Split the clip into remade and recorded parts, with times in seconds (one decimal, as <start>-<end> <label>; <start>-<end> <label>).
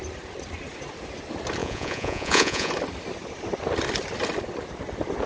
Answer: 0.0-1.6 recorded; 1.6-2.7 remade; 2.7-5.3 recorded